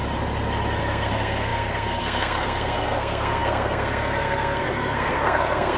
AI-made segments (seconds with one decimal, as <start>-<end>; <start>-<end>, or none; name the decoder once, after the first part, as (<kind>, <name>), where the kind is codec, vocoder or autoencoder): 0.8-5.8 (codec, SNAC)